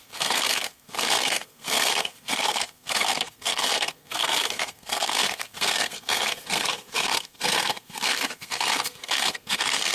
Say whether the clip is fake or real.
fake